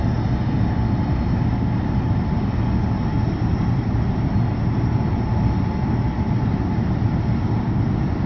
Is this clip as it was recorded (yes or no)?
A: yes